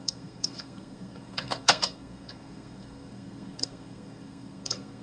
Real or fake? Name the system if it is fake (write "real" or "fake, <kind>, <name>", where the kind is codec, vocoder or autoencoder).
fake, codec, SNAC